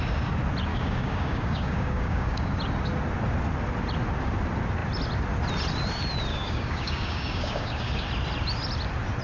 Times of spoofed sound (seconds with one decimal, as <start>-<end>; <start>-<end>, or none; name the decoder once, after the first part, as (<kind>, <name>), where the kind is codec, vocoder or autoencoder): 0.7-2.5 (codec, DAC); 6.3-8.1